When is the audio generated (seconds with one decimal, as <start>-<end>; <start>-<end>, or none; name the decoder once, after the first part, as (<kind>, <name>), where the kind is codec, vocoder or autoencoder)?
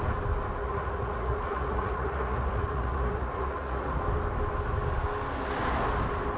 0.6-4.0 (vocoder, Vocos)